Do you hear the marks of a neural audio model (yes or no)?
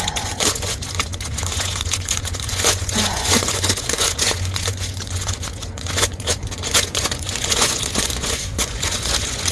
yes